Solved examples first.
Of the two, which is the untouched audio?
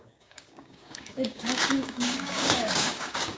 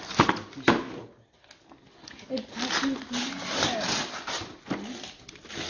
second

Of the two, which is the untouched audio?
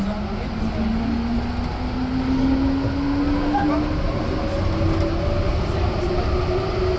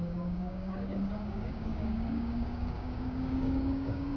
first